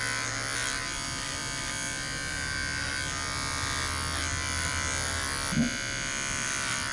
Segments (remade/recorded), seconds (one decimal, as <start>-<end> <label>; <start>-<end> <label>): 0.0-6.9 recorded